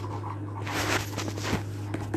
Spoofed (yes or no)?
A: no